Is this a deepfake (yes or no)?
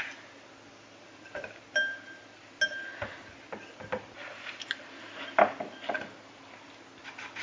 no